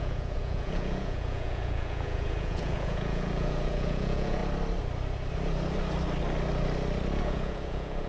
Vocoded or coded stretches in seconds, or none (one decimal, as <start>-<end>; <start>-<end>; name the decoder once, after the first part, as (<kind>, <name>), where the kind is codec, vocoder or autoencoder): 0.0-4.4 (vocoder, Vocos); 7.2-8.1